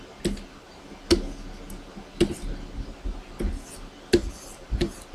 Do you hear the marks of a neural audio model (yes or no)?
no